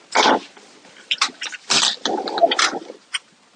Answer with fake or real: real